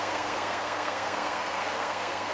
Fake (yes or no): yes